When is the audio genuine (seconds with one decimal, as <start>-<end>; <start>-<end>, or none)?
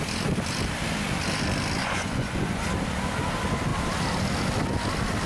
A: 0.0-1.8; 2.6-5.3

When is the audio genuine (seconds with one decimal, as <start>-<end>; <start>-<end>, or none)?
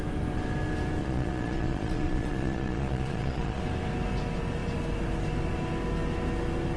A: 0.0-1.0; 3.6-6.8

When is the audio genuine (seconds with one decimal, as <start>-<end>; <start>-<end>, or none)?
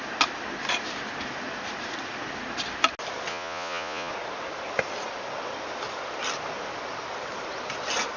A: 0.0-3.3; 4.1-8.2